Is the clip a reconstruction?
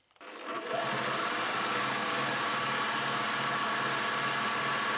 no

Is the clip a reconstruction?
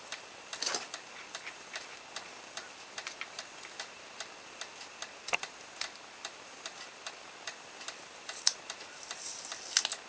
no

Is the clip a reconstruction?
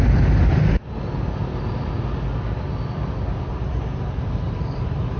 no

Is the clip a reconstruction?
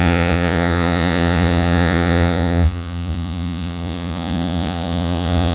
yes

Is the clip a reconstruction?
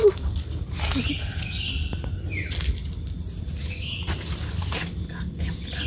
no